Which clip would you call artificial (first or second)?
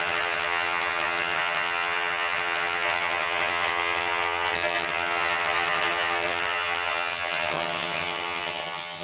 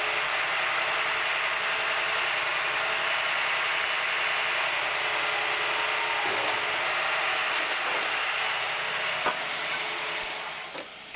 first